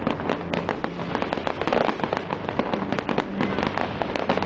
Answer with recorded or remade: recorded